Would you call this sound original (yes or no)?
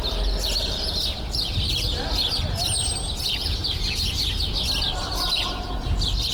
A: yes